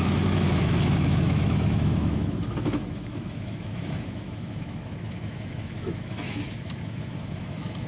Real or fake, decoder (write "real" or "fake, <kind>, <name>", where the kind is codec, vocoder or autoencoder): fake, autoencoder, DAC-VAE